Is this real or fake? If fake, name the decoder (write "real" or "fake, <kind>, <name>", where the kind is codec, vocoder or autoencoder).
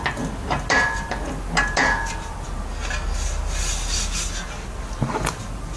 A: real